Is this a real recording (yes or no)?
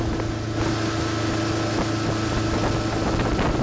yes